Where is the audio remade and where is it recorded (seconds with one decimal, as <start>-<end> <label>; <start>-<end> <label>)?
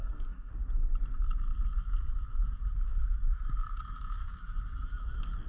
0.0-0.5 remade; 0.5-5.5 recorded